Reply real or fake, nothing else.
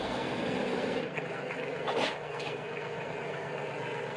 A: fake